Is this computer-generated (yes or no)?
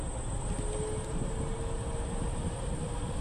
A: no